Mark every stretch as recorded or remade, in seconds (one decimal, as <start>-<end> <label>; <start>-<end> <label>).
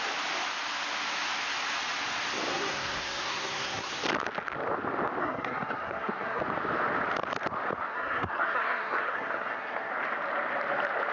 0.0-2.5 recorded; 2.5-3.9 remade; 3.9-5.2 recorded; 5.2-6.4 remade; 6.4-7.9 recorded; 7.9-9.9 remade; 9.9-11.1 recorded